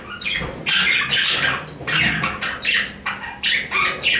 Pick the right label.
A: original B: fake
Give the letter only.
A